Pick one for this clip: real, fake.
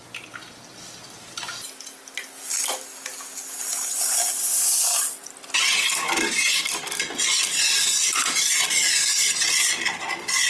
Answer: real